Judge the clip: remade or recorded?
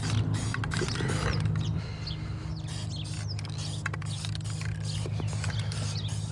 recorded